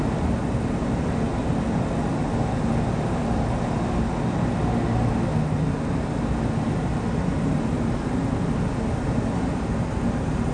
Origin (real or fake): real